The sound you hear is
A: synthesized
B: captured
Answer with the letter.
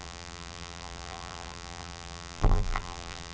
A